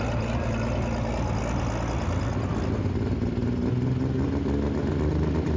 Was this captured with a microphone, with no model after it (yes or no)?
yes